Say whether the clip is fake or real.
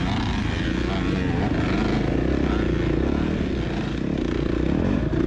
real